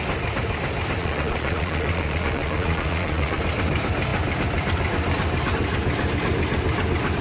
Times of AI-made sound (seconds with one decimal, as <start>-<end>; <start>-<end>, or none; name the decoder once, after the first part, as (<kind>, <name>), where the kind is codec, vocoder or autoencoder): 1.0-3.4 (vocoder, Vocos)